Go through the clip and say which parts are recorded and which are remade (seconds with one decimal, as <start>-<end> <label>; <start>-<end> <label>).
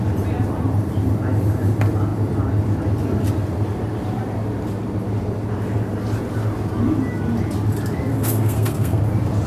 0.0-8.1 recorded; 8.1-9.0 remade; 9.0-9.5 recorded